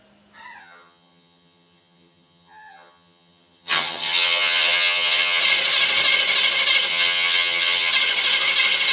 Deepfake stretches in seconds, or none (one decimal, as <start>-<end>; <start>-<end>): 0.6-5.4; 6.9-7.9